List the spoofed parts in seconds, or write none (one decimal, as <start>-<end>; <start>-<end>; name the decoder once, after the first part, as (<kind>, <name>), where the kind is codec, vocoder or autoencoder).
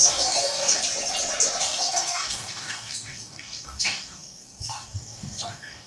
0.0-0.8 (codec, DAC); 1.6-5.9